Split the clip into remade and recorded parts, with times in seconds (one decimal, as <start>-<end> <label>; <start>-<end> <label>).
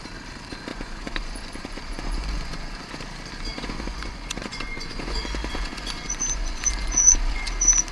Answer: 0.0-0.7 recorded; 0.7-3.0 remade; 3.0-3.5 recorded; 3.5-7.5 remade; 7.5-7.9 recorded